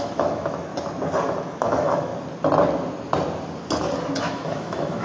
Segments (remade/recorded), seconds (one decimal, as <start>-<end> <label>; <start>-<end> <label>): 0.0-0.7 remade; 0.7-1.4 recorded; 1.4-2.1 remade; 2.1-4.2 recorded; 4.2-5.0 remade